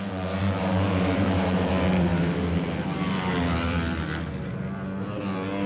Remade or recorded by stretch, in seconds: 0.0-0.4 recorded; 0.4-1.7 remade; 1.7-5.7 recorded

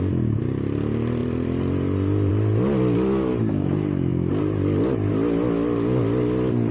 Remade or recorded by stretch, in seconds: 0.0-1.2 recorded; 1.2-2.3 remade; 2.3-4.1 recorded; 4.1-5.1 remade; 5.1-6.7 recorded

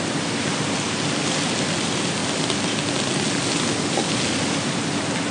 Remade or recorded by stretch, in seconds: 0.0-5.3 recorded

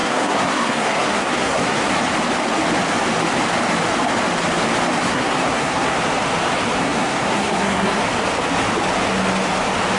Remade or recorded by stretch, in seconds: 0.0-1.9 remade; 1.9-5.0 recorded; 5.0-6.0 remade; 6.0-6.8 recorded; 6.8-8.0 remade; 8.0-10.0 recorded

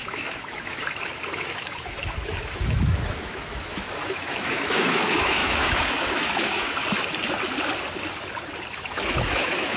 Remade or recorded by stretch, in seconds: 0.0-6.8 remade; 6.8-8.7 recorded; 8.7-9.8 remade